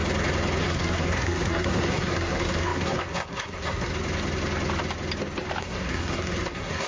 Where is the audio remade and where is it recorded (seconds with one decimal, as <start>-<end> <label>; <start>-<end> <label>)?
0.0-0.6 recorded; 0.6-3.9 remade; 3.9-5.6 recorded; 5.6-6.9 remade